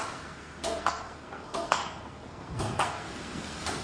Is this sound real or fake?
fake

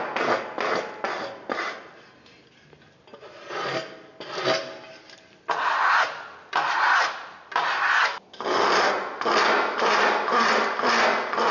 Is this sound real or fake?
real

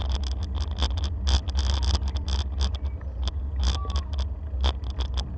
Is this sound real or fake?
real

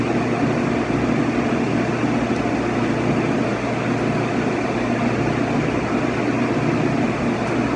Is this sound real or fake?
real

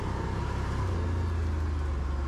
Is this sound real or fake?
real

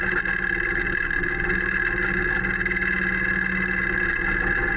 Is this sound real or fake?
real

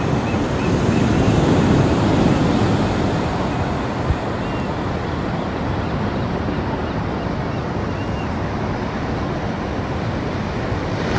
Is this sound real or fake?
real